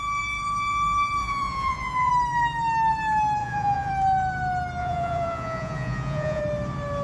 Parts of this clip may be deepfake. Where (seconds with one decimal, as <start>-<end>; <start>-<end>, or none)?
1.2-2.1; 3.4-3.9; 4.8-6.4